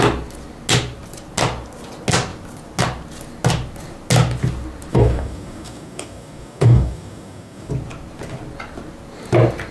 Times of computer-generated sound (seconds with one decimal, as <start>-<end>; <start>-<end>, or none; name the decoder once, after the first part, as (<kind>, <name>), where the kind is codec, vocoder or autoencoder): 4.9-7.7 (codec, DAC)

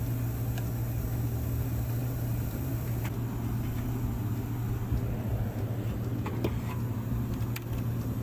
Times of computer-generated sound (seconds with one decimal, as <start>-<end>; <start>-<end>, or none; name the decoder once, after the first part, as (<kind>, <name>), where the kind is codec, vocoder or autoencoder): 2.0-3.0 (vocoder, BigVGAN v2)